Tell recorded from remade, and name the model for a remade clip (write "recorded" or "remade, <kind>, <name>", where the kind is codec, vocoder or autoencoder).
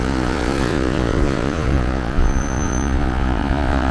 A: remade, vocoder, Vocos